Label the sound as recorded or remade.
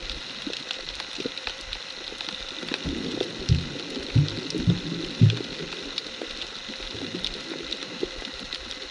recorded